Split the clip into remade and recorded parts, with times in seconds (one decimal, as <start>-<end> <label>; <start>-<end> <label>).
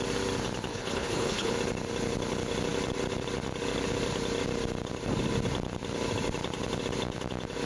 0.0-0.7 recorded; 0.7-1.5 remade; 1.5-7.7 recorded